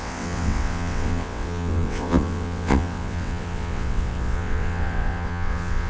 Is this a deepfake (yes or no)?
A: yes